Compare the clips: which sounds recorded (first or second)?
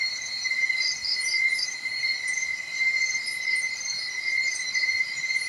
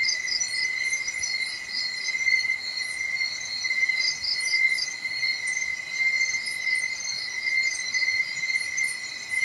second